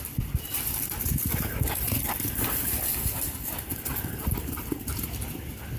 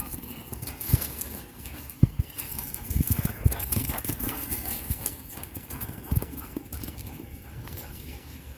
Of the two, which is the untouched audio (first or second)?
first